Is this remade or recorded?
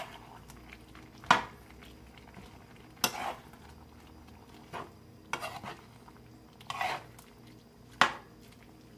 recorded